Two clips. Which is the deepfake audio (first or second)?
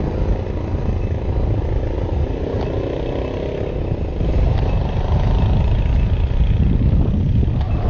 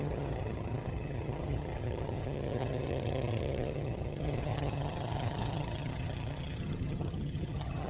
second